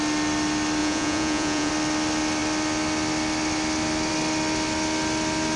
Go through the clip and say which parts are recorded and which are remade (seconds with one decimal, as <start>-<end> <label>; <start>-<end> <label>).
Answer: 0.0-0.8 recorded; 0.8-1.7 remade; 1.7-5.6 recorded